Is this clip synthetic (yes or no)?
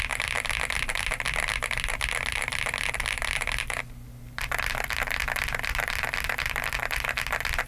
no